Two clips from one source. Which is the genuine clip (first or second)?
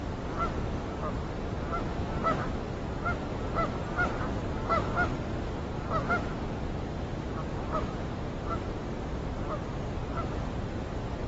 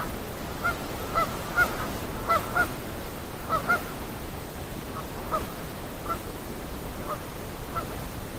first